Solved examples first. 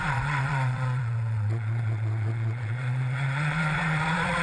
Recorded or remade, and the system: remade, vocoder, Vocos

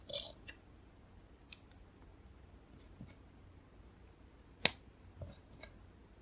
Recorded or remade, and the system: recorded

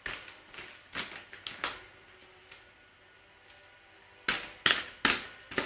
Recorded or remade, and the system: recorded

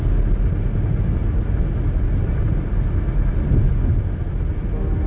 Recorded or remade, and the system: recorded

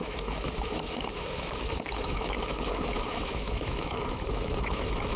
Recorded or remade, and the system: remade, autoencoder, DAC-VAE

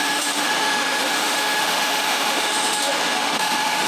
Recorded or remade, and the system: remade, autoencoder, DAC-VAE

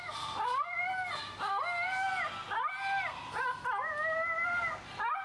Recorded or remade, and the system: recorded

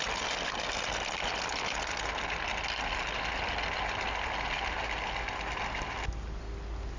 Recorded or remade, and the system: recorded